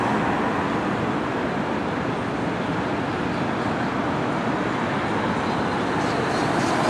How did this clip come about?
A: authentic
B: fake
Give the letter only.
A